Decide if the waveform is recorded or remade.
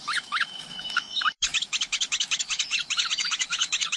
remade